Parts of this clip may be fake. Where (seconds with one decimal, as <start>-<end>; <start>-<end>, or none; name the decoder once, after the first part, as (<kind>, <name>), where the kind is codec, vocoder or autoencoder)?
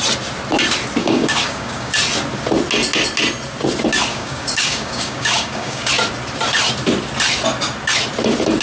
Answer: 1.0-1.9 (codec, DAC); 4.1-5.9